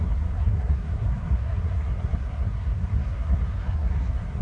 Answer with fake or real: fake